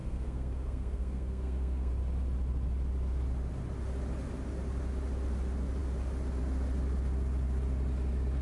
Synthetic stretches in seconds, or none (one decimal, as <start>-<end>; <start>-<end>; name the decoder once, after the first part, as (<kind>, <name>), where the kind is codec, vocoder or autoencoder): 0.0-1.9 (codec, SNAC)